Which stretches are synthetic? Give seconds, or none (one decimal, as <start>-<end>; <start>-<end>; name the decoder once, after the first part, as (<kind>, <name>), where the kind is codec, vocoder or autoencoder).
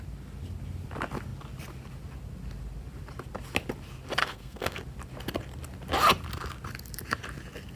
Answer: 4.2-4.8 (codec, SNAC)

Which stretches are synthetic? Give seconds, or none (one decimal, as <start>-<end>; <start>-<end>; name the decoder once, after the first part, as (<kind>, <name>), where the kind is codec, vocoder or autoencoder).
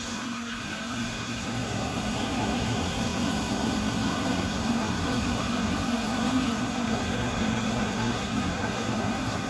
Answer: 0.0-9.5 (codec, SNAC)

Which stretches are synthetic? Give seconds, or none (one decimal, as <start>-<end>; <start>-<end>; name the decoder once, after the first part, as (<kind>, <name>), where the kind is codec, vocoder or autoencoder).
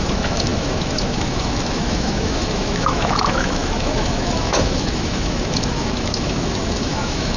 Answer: 0.0-7.4 (autoencoder, DAC-VAE)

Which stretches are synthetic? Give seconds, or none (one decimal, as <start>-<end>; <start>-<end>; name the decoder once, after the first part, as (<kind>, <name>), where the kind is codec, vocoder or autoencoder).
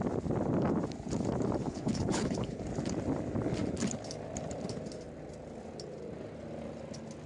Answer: 1.6-2.6 (codec, HILCodec)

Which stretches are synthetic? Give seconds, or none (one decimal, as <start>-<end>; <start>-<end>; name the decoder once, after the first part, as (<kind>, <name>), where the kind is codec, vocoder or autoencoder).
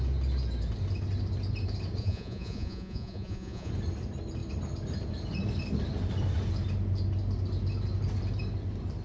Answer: 2.0-3.7 (vocoder, Vocos)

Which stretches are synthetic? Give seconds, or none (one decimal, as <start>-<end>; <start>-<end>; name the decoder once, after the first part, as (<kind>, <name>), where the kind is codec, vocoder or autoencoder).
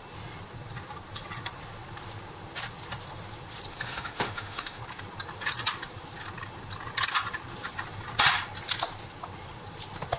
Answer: 3.7-4.8 (autoencoder, DAC-VAE)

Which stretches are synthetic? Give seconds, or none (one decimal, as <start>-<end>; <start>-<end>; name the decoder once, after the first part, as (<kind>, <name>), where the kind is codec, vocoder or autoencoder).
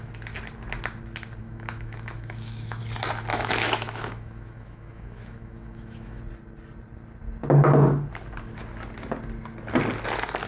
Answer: 1.4-2.8 (autoencoder, DAC-VAE); 3.3-6.2